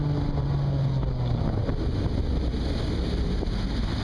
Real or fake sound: real